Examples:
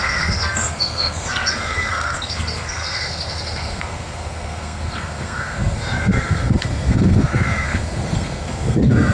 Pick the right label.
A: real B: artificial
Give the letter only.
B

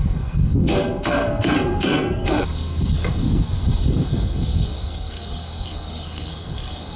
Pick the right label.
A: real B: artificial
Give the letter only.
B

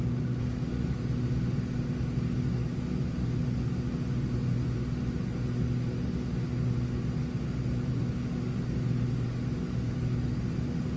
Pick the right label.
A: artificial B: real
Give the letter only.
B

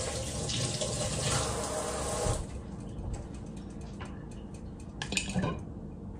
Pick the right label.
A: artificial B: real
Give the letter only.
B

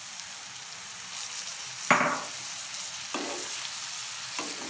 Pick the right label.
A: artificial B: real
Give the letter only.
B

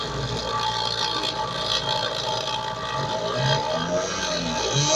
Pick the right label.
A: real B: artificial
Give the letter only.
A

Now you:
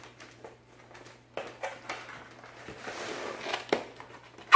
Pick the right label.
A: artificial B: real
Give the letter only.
B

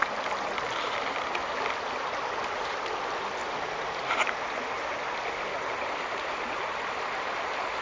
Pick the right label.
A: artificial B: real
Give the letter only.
B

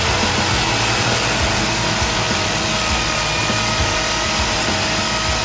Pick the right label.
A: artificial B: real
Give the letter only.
B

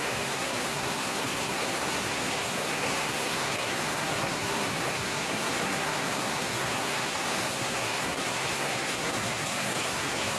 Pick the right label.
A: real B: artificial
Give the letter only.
B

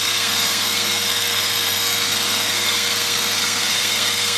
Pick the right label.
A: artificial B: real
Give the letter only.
A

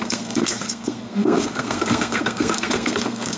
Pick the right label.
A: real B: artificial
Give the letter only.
B